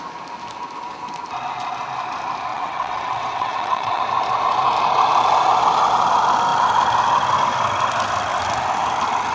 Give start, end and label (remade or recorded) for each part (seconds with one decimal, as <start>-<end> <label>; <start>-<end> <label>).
0.0-2.5 recorded; 2.5-4.0 remade; 4.0-9.3 recorded